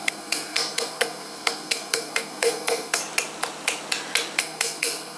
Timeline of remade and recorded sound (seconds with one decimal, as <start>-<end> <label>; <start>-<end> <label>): 0.0-3.0 remade; 3.0-4.4 recorded; 4.4-5.2 remade